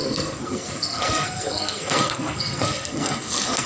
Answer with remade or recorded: remade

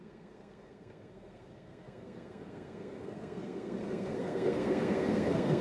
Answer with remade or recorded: remade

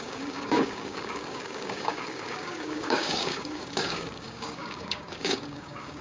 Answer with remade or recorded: remade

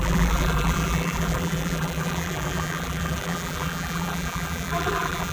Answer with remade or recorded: remade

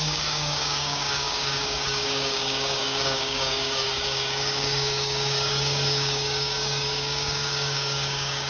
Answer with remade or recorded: remade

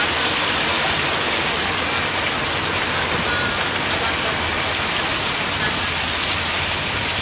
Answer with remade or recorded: recorded